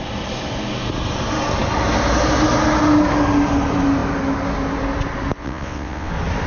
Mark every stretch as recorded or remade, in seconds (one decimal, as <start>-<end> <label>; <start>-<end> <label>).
0.0-5.4 recorded; 5.4-6.1 remade; 6.1-6.5 recorded